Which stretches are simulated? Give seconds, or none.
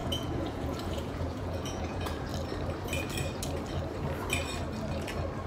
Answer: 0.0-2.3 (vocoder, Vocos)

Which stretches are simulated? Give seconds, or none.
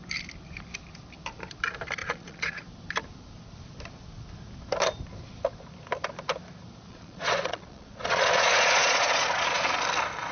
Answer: 2.0-2.6 (vocoder, Vocos); 6.9-9.8